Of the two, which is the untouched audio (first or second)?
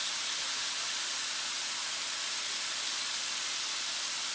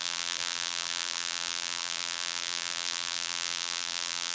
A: first